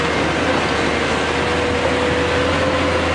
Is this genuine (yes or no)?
yes